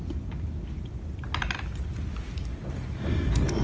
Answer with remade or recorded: recorded